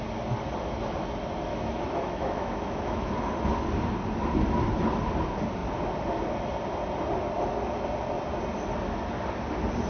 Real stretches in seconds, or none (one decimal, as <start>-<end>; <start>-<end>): 0.0-1.5; 3.1-9.9

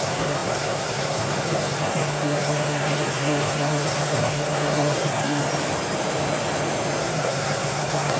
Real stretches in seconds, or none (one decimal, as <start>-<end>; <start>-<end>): 5.4-7.0

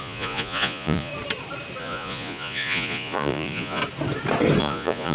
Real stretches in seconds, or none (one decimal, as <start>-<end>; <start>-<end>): 1.1-1.8; 3.8-4.6

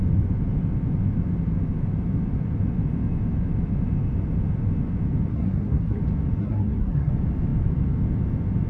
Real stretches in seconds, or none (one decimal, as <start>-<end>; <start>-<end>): 0.0-5.3; 6.0-6.4; 7.1-8.7

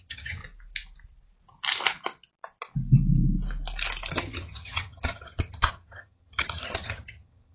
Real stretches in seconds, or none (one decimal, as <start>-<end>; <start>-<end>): 0.4-4.1